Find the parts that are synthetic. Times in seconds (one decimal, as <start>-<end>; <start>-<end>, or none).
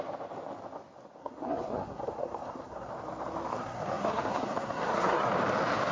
1.2-2.9; 3.5-5.3